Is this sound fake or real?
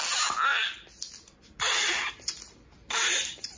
real